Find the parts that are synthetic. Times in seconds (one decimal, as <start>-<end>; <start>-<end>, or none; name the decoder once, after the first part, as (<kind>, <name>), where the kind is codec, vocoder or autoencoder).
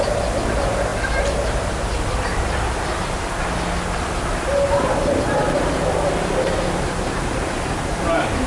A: none